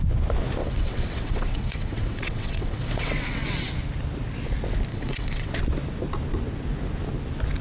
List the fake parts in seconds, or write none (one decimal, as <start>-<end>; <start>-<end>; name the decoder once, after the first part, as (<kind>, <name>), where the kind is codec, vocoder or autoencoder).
0.6-3.7 (vocoder, WaveNeXt); 4.9-5.5